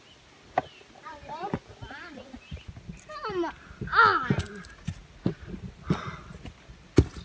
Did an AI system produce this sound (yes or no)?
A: no